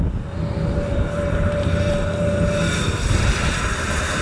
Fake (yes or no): no